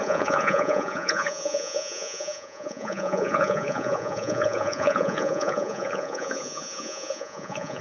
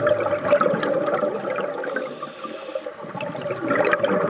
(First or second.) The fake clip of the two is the first